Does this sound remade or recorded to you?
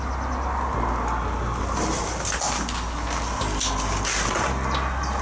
recorded